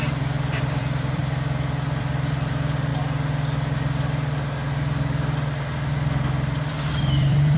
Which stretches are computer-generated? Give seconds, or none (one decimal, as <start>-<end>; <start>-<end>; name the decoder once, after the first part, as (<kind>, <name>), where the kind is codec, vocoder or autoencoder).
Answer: 0.0-1.2 (vocoder, BigVGAN v2); 2.0-2.9; 6.7-7.6